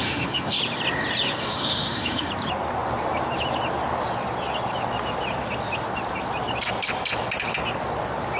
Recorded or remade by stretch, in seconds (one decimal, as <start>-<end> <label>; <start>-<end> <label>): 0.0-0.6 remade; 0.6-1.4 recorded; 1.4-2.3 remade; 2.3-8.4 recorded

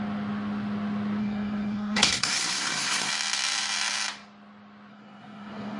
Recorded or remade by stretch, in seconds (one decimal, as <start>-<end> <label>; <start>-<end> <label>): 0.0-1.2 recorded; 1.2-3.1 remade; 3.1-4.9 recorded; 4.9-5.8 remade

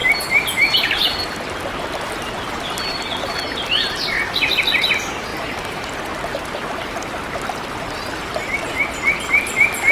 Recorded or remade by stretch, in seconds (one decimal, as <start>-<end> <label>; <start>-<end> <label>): 0.0-9.9 recorded

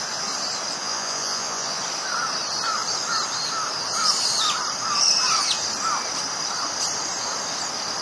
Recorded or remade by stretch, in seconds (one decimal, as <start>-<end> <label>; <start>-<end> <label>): 0.0-0.8 recorded; 0.8-1.8 remade; 1.8-8.0 recorded